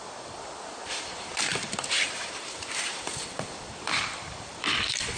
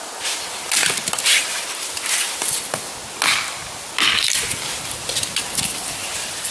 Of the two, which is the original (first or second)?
second